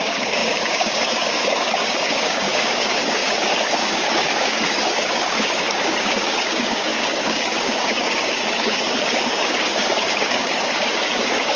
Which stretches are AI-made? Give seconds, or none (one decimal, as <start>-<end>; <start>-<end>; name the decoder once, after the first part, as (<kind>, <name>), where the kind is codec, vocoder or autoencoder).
0.0-11.6 (codec, DAC)